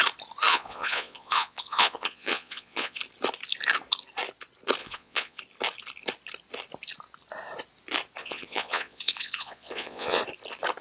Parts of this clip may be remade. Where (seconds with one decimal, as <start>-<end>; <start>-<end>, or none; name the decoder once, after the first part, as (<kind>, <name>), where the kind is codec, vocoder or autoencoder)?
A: 0.5-3.0 (vocoder, Vocos); 4.8-5.4; 8.2-10.2